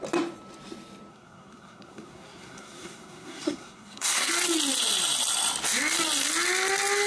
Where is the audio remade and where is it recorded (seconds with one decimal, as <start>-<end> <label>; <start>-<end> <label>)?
0.0-1.1 recorded; 1.1-4.3 remade; 4.3-7.1 recorded